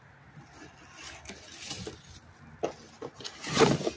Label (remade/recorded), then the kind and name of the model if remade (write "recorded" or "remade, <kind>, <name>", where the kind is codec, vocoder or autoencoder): recorded